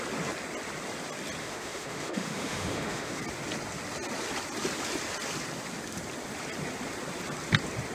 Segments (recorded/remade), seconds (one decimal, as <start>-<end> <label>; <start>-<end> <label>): 0.0-1.4 recorded; 1.4-3.2 remade; 3.2-7.9 recorded